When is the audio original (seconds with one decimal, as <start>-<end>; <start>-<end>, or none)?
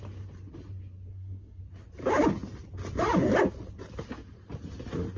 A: 0.0-1.1; 1.6-5.2